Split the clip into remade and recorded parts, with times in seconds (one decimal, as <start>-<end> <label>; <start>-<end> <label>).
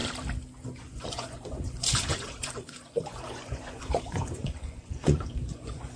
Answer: 0.0-0.8 recorded; 0.8-6.0 remade